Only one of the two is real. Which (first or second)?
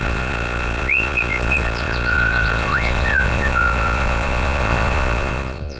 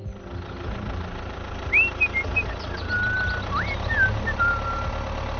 second